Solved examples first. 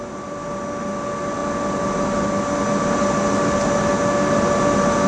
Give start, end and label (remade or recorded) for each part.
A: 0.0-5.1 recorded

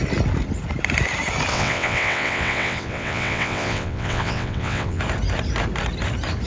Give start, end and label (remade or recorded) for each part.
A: 0.0-1.5 recorded; 1.5-5.0 remade; 5.0-6.5 recorded

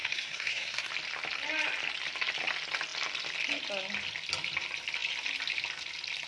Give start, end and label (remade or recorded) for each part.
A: 0.0-0.9 remade; 0.9-6.3 recorded